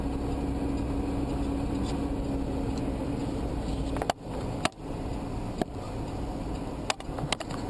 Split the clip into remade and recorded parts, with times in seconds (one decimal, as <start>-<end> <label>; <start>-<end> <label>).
0.0-7.7 recorded